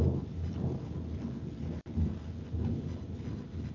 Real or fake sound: real